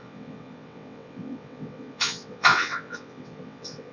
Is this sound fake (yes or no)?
yes